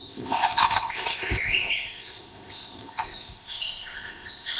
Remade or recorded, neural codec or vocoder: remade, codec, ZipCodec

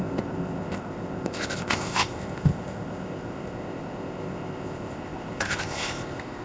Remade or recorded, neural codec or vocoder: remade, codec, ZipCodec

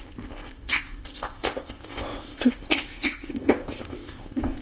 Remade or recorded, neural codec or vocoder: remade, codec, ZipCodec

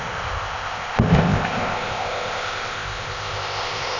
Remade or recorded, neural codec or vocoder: remade, codec, ZipCodec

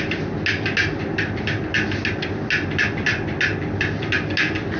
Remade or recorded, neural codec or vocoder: recorded